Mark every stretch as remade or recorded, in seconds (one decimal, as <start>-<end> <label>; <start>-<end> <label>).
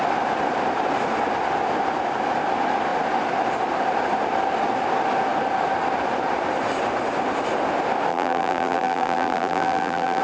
0.0-8.1 recorded; 8.1-10.2 remade